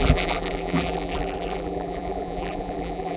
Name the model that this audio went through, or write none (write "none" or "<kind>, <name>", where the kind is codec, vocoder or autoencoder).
vocoder, BigVGAN v2